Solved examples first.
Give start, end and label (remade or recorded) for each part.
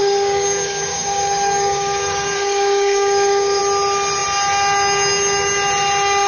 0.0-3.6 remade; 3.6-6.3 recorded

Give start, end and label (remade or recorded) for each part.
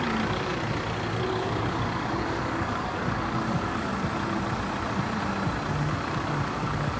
0.0-0.5 remade; 0.5-1.3 recorded; 1.3-3.9 remade; 3.9-5.9 recorded; 5.9-7.0 remade